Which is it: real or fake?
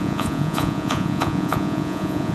fake